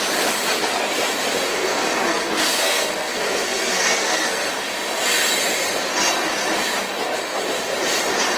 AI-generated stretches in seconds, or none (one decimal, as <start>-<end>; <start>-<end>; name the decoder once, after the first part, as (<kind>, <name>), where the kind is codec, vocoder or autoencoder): 1.5-4.5 (codec, SNAC)

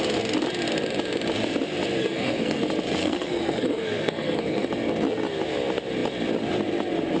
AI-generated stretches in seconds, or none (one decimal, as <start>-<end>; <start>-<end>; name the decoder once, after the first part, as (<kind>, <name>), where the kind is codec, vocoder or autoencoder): 2.0-2.6 (codec, SNAC); 3.0-4.7

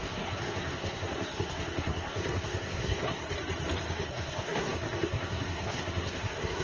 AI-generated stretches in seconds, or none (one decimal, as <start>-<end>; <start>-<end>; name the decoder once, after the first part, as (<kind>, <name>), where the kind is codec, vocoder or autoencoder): 0.0-3.2 (codec, SNAC); 4.1-6.6

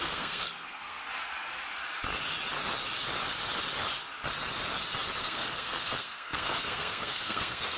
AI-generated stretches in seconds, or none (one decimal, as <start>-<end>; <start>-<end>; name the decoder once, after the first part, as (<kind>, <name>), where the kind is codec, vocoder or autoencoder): 0.0-1.0 (codec, SNAC); 5.2-7.8

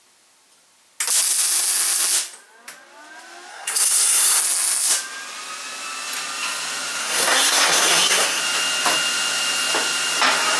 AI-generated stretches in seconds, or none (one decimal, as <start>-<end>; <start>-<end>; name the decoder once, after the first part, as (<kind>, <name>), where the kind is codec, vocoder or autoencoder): 3.5-4.4 (codec, SNAC); 7.0-8.4